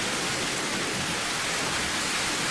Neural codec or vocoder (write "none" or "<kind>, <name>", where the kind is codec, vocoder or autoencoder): none